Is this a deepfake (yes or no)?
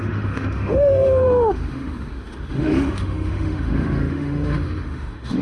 yes